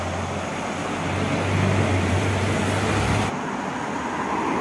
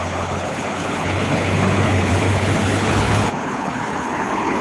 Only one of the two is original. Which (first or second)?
first